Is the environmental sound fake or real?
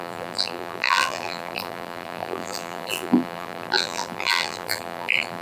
fake